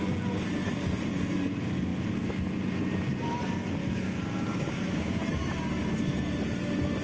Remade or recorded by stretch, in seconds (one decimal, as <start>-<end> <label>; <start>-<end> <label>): 0.0-3.8 recorded; 3.8-5.2 remade; 5.2-7.0 recorded